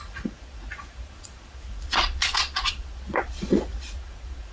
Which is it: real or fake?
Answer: fake